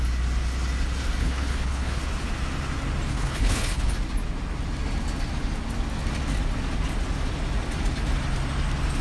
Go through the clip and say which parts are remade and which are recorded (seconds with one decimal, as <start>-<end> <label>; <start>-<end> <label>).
0.0-1.2 recorded; 1.2-2.0 remade; 2.0-3.1 recorded; 3.1-3.9 remade; 3.9-9.0 recorded